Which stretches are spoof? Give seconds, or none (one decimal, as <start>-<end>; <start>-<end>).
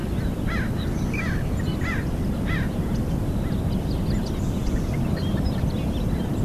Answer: none